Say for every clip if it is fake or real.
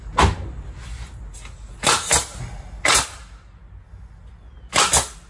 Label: real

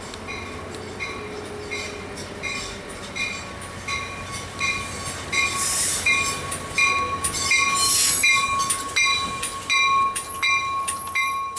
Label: real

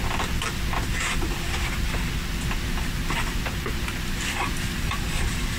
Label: real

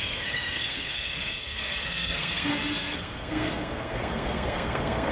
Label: fake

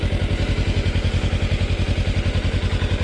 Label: real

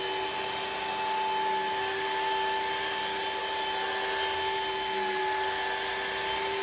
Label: real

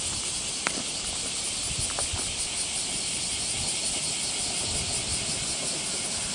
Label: fake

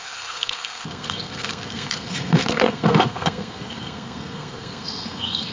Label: fake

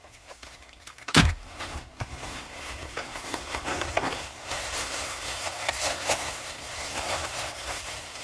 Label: fake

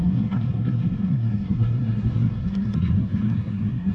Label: fake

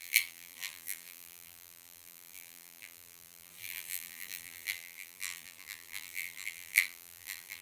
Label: fake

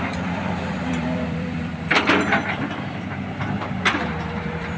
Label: fake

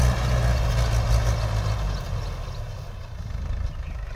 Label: real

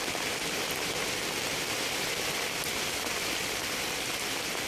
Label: real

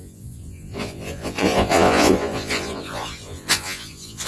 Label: fake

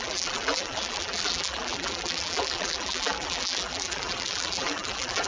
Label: fake